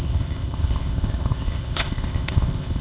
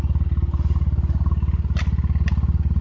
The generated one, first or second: first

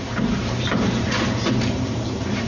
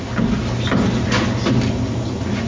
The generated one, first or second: first